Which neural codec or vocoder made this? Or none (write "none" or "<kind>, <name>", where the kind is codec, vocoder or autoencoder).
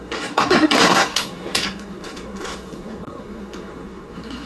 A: codec, SNAC